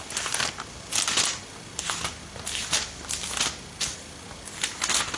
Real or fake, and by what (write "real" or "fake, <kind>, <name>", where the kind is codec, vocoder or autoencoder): real